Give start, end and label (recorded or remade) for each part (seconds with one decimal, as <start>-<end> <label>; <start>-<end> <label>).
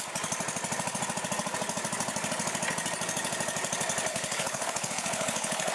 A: 0.0-4.1 recorded; 4.1-5.7 remade